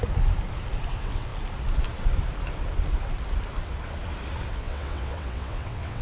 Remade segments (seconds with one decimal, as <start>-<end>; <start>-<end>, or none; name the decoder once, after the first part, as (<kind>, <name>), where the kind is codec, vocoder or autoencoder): 0.9-1.3 (vocoder, WaveNeXt); 4.5-6.0